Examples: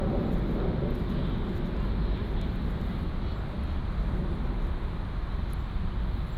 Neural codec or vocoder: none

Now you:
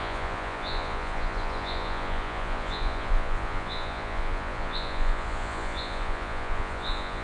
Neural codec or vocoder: vocoder, Vocos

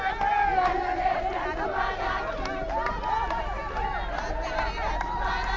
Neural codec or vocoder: none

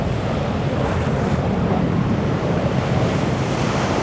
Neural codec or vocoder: vocoder, BigVGAN v2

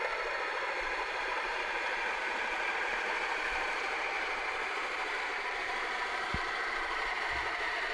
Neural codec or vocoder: vocoder, BigVGAN v2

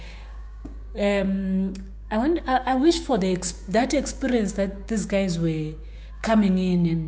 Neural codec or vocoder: codec, DAC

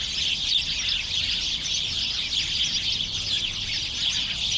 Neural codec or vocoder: none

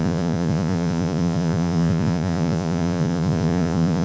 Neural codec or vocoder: vocoder, Vocos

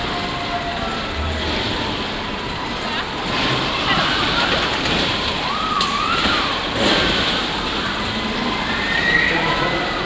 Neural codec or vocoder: none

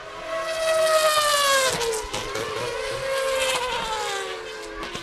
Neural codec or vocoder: none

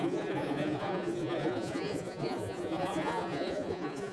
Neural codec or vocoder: vocoder, Vocos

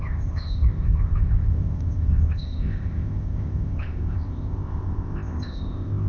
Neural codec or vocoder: codec, ZipCodec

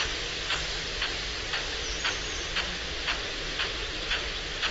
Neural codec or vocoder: none